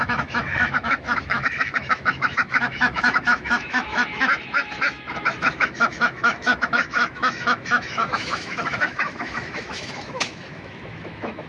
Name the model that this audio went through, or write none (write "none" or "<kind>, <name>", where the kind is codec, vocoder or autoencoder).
autoencoder, DAC-VAE